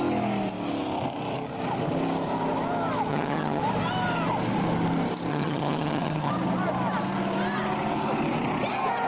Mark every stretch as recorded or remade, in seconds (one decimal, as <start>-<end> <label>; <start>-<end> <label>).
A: 0.0-3.1 recorded; 3.1-3.6 remade; 3.6-5.3 recorded; 5.3-6.3 remade; 6.3-9.1 recorded